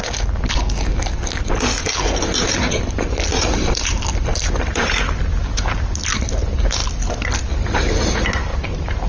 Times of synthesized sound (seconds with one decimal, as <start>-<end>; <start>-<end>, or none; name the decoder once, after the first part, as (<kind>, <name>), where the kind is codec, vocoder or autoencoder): 3.3-5.4 (vocoder, BigVGAN v2); 6.8-8.1; 8.5-9.1